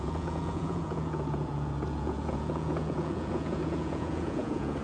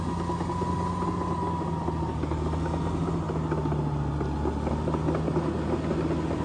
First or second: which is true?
second